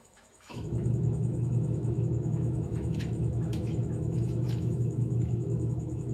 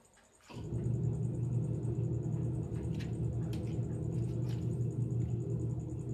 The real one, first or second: second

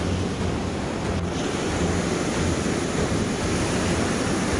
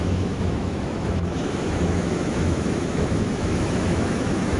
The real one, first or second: first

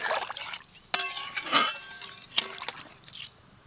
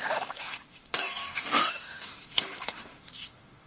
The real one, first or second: first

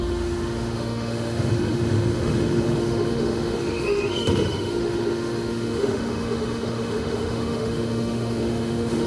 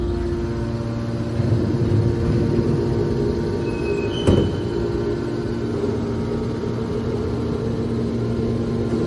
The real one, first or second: second